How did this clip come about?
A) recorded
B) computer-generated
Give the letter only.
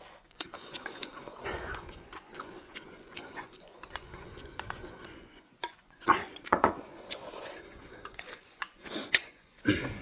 B